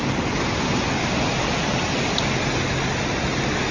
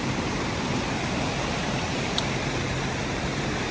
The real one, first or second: first